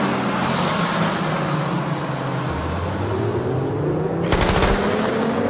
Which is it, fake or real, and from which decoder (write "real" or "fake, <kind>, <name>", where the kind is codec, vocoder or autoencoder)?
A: real